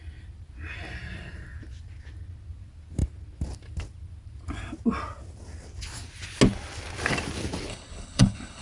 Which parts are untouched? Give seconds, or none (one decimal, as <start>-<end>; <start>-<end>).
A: 0.0-7.7